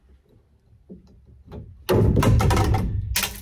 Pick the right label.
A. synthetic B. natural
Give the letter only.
B